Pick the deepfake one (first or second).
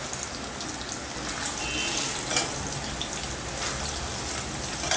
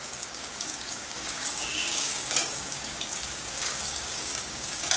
second